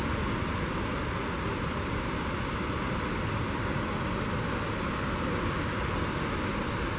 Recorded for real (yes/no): yes